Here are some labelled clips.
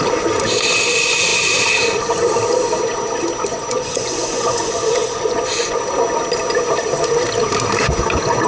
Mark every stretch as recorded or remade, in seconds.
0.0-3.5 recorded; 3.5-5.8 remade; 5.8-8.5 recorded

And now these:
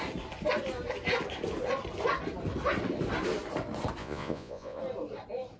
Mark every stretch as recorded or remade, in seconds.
0.0-4.0 recorded; 4.0-4.8 remade; 4.8-5.6 recorded

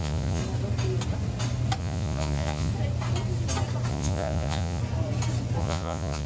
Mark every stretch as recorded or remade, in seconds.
0.0-0.4 remade; 0.4-1.8 recorded; 1.8-2.7 remade; 2.7-3.9 recorded; 3.9-4.8 remade; 4.8-5.6 recorded; 5.6-6.3 remade

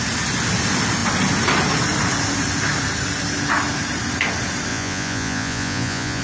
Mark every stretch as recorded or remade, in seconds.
0.0-4.7 recorded; 4.7-6.2 remade

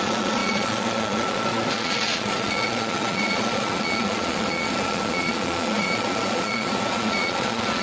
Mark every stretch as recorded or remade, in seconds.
0.0-7.8 remade

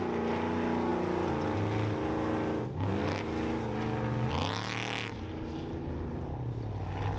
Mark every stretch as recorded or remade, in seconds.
0.0-7.2 recorded